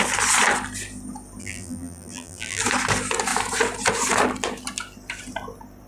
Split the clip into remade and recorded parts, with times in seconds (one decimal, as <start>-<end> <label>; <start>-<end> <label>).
0.0-1.4 recorded; 1.4-2.6 remade; 2.6-5.9 recorded